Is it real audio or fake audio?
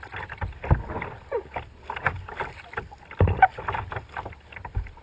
real